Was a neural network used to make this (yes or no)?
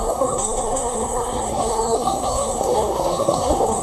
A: yes